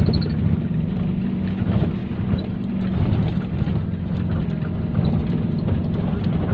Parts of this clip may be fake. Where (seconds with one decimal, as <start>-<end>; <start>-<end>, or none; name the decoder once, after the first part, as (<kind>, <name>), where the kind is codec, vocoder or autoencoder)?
none